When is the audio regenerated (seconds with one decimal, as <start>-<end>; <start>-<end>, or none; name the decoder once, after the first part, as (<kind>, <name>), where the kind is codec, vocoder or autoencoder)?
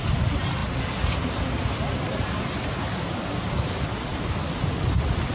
none